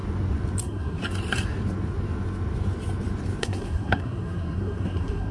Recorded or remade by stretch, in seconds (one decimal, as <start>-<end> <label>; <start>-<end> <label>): 0.0-0.6 recorded; 0.6-1.0 remade; 1.0-3.4 recorded; 3.4-5.3 remade